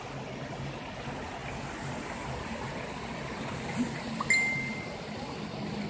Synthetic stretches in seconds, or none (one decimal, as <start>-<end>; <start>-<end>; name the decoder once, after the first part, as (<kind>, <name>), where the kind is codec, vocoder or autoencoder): none